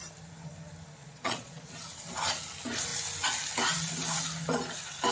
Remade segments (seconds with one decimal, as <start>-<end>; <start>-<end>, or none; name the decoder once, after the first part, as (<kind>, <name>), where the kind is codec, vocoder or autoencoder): 1.0-1.7 (vocoder, Vocos)